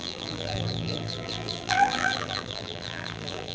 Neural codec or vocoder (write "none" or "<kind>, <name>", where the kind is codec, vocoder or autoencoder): vocoder, BigVGAN v2